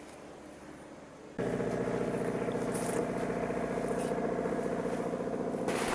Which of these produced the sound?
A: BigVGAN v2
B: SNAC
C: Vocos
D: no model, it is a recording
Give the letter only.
D